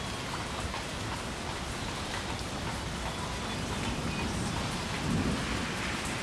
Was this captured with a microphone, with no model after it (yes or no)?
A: yes